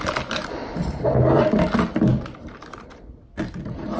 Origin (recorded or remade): recorded